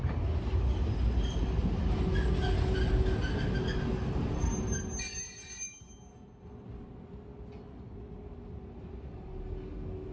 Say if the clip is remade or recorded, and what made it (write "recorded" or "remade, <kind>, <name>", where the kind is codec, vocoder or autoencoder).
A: recorded